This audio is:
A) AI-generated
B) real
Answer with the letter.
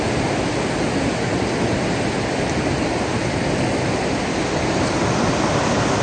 B